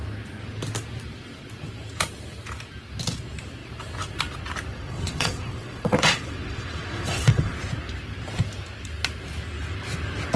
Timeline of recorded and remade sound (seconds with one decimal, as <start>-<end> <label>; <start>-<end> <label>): 0.0-4.7 recorded; 4.7-7.5 remade; 7.5-10.4 recorded